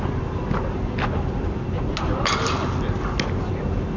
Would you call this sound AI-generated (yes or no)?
no